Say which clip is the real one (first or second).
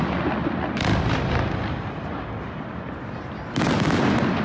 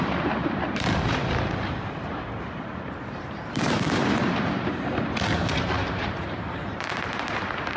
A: first